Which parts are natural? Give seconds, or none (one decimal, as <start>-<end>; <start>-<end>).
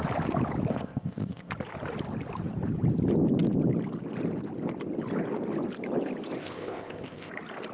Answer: 0.0-0.7; 1.5-6.4; 7.3-7.7